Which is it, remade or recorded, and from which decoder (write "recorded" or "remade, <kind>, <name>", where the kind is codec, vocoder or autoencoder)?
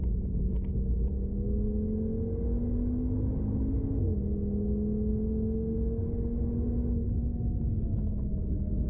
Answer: recorded